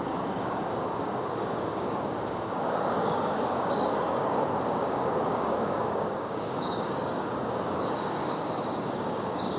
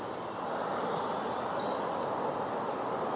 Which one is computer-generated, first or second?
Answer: first